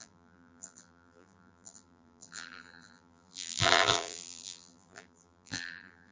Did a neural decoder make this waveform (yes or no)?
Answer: yes